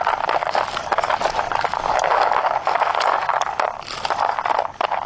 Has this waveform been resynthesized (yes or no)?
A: no